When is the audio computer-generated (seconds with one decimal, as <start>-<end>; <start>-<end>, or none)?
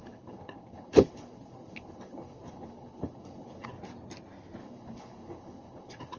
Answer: 0.0-3.7; 4.6-6.2